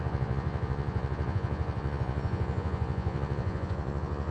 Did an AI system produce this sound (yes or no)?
yes